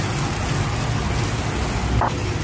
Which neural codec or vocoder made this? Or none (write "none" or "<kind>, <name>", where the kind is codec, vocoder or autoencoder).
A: none